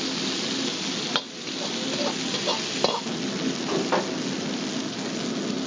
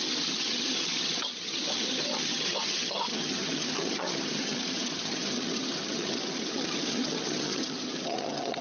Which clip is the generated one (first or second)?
second